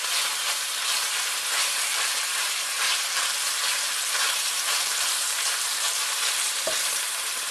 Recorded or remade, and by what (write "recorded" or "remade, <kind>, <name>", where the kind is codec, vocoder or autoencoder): remade, vocoder, BigVGAN v2